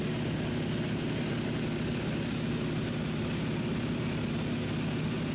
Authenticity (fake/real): real